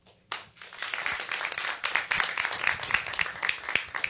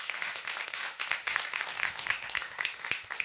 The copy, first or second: second